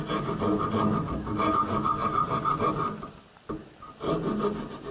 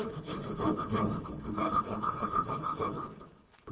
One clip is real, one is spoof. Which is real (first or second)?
first